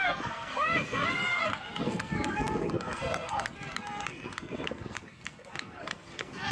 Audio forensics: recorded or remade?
remade